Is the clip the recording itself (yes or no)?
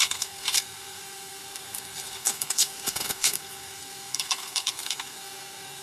no